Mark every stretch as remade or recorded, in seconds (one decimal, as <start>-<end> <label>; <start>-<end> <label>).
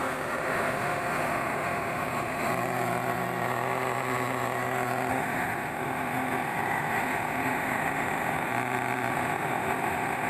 0.0-2.5 remade; 2.5-5.1 recorded; 5.1-8.5 remade; 8.5-9.1 recorded; 9.1-10.3 remade